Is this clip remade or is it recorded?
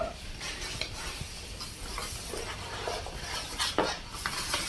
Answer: recorded